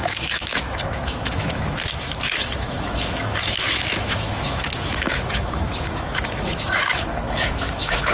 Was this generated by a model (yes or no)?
yes